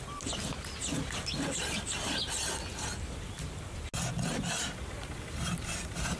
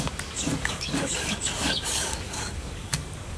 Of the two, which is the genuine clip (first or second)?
first